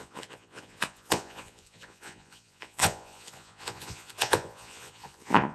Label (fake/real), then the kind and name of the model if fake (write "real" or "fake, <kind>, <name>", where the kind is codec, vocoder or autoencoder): fake, vocoder, Vocos